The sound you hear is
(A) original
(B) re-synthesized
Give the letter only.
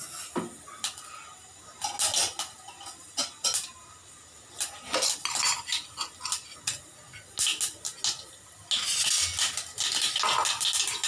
A